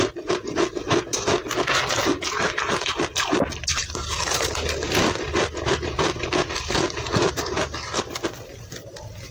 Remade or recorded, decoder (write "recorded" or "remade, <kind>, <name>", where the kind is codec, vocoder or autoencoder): recorded